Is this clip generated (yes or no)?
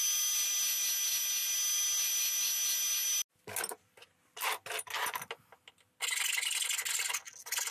no